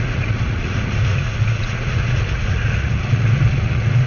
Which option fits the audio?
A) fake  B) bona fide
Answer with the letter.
A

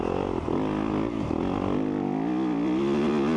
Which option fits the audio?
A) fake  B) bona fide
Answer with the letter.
B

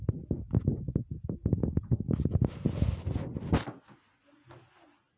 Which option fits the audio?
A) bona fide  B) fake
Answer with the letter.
A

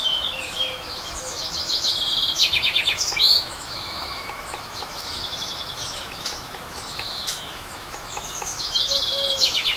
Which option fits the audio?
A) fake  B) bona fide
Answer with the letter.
A